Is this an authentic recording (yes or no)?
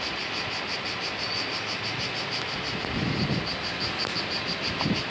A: yes